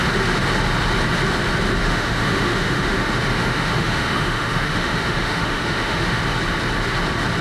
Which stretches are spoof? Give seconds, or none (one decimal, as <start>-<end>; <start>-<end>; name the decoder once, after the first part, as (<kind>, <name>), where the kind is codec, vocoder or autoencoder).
1.8-6.2 (autoencoder, DAC-VAE)